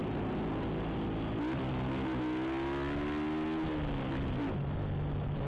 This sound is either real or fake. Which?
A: real